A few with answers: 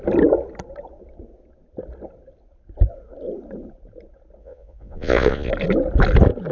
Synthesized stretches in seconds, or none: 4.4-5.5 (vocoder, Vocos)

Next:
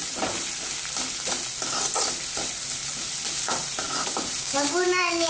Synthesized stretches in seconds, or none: 4.4-5.3 (codec, DAC)

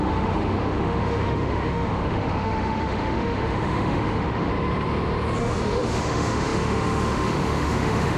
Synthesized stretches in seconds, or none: 0.0-4.5 (autoencoder, DAC-VAE); 5.4-8.2

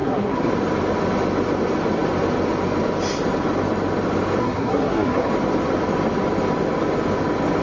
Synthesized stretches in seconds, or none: 0.0-0.5 (codec, SNAC); 4.4-5.3

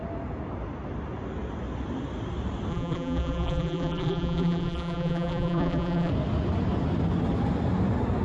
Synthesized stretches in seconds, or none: 2.7-6.1 (vocoder, BigVGAN v2)

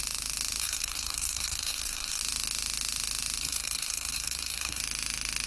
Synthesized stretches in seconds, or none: 0.6-2.2 (codec, SNAC); 3.4-4.8

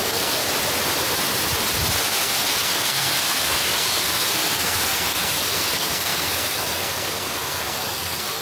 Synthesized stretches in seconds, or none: 0.0-0.4 (codec, SNAC); 2.0-8.4